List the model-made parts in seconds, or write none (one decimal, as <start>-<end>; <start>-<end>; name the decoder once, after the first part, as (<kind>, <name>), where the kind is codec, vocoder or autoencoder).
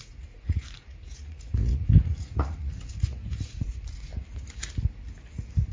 0.0-4.1 (vocoder, Vocos)